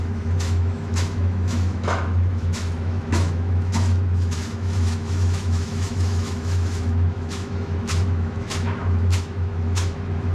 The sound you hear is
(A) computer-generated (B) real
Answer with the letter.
A